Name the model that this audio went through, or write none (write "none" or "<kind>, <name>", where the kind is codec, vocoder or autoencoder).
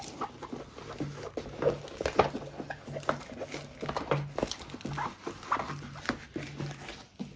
none